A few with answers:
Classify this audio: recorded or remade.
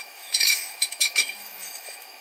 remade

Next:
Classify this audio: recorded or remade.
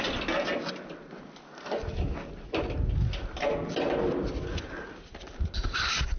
recorded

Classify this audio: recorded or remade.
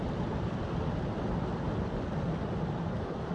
recorded